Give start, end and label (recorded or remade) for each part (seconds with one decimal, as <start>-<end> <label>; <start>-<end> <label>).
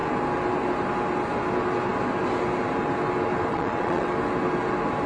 0.0-3.5 recorded; 3.5-4.1 remade; 4.1-5.1 recorded